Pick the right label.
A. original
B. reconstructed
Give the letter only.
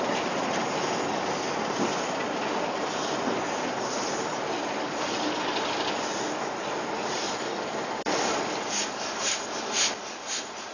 A